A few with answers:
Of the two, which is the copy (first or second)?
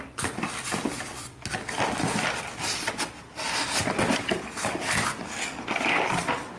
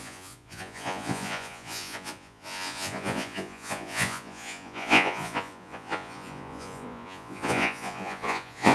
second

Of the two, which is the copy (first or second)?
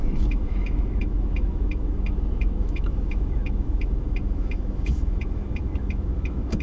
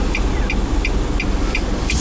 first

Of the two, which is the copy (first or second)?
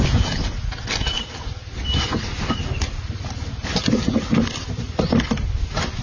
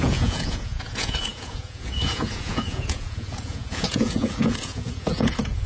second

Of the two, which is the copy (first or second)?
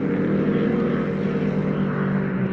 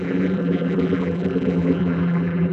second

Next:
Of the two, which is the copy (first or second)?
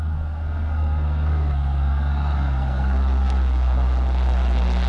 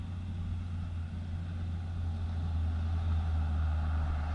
first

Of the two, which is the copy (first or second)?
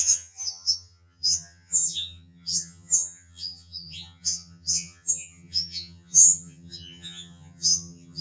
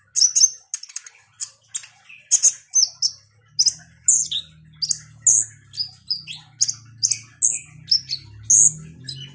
first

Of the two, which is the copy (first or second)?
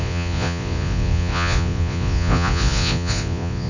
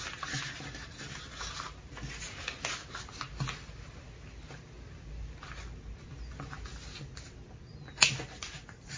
first